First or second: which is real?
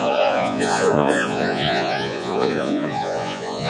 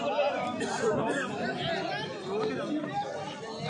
second